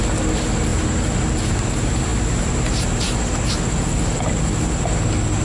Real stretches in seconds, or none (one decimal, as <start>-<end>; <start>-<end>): 0.0-5.4